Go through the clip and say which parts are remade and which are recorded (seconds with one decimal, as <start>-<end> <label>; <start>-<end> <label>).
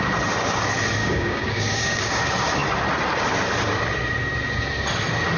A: 0.0-1.0 recorded; 1.0-2.2 remade; 2.2-5.4 recorded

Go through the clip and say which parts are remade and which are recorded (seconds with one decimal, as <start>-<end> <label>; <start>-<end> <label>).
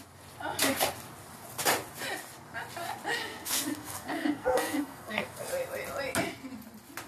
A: 0.0-3.1 recorded; 3.1-5.5 remade; 5.5-7.1 recorded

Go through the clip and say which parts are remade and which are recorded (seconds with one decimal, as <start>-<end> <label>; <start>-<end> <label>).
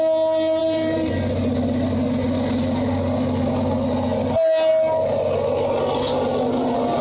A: 0.0-0.6 recorded; 0.6-1.1 remade; 1.1-7.0 recorded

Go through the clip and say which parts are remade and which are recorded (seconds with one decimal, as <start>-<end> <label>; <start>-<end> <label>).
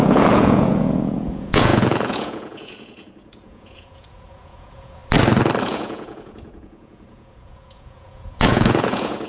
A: 0.0-5.0 remade; 5.0-5.6 recorded; 5.6-9.3 remade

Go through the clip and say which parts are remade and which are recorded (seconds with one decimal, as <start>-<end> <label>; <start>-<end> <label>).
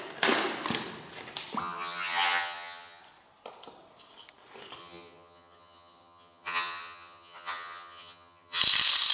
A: 0.0-1.6 recorded; 1.6-3.0 remade; 3.0-4.8 recorded; 4.8-8.6 remade; 8.6-9.1 recorded